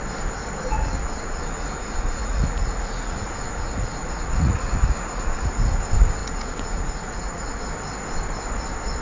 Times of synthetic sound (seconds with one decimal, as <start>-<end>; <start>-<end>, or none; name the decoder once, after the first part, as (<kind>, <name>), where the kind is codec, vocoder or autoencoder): 0.6-5.5 (vocoder, Vocos); 6.2-7.6